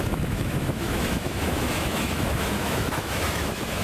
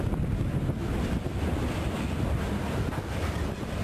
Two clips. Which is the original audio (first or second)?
second